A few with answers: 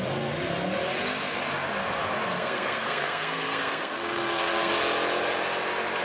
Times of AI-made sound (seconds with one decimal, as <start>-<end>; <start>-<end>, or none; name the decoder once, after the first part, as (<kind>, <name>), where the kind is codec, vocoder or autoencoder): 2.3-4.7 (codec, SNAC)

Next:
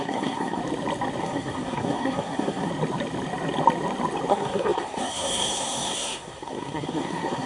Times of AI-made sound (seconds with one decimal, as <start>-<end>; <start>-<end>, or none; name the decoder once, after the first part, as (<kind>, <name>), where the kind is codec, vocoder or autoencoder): 0.0-0.6 (codec, SNAC); 1.2-2.7; 4.3-7.5

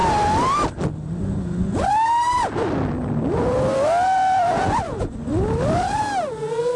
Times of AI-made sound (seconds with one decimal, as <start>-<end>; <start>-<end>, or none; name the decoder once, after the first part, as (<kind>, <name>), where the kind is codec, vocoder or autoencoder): 1.2-1.9 (vocoder, Vocos); 4.5-5.3; 6.3-6.8